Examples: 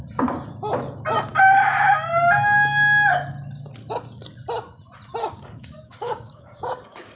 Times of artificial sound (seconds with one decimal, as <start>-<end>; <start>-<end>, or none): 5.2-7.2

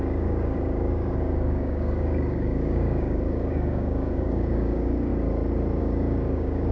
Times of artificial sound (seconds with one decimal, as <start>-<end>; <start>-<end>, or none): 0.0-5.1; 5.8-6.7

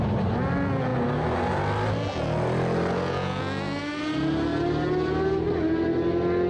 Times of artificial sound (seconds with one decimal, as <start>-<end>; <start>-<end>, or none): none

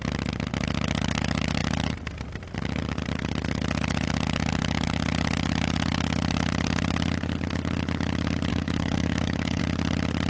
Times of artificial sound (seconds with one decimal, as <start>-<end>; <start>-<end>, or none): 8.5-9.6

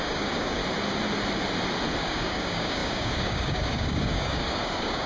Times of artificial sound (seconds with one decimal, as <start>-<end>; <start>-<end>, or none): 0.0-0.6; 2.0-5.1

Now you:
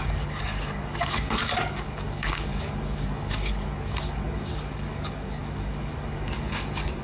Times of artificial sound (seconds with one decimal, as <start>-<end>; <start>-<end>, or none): 0.0-7.0